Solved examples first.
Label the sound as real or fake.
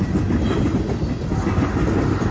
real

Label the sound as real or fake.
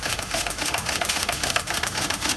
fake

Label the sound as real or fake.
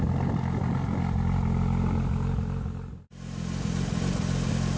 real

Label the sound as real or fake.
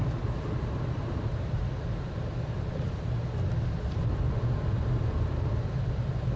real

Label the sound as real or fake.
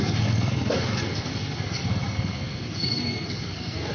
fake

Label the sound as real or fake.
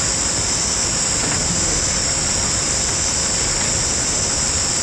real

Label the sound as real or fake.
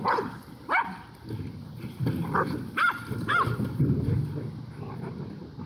real